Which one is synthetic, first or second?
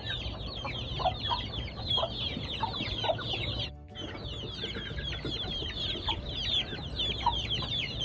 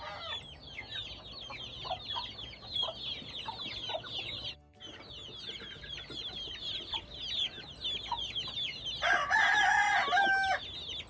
first